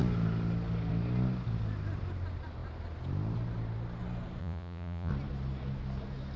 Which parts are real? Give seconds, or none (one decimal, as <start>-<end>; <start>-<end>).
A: 0.0-4.4; 5.1-6.4